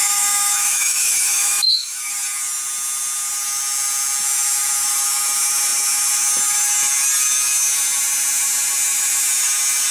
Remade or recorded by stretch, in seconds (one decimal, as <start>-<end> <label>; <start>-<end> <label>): 0.0-2.1 remade; 2.1-9.9 recorded